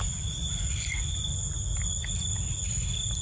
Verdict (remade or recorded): recorded